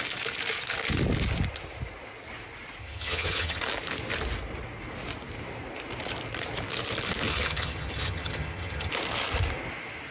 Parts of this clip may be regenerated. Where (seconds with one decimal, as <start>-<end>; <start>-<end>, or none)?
2.8-3.6; 7.3-8.9